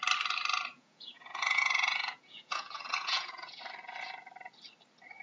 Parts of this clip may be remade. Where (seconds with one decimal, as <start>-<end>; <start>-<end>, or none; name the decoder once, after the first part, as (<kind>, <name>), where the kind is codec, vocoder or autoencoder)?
0.7-3.6 (vocoder, Vocos)